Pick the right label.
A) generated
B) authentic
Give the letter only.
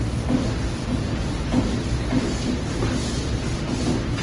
B